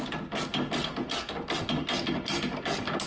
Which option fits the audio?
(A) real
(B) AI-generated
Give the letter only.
A